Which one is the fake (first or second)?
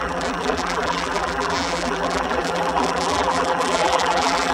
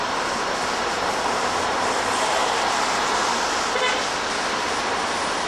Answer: first